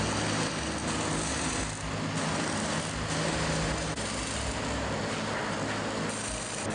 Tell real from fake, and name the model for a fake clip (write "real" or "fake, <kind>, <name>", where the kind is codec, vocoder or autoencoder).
real